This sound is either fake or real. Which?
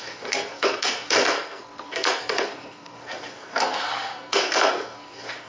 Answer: fake